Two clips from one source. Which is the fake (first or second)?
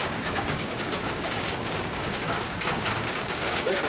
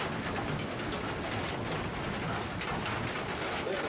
first